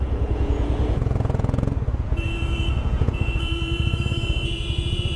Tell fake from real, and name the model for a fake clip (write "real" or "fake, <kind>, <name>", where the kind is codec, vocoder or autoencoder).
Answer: fake, vocoder, Vocos